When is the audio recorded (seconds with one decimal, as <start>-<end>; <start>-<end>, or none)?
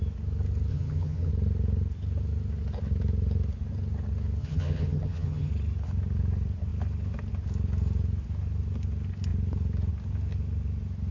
0.0-0.7; 1.3-4.4; 5.5-11.1